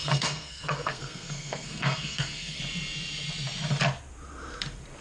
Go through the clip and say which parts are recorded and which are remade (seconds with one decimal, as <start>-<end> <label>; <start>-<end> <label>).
0.0-2.6 remade; 2.6-5.0 recorded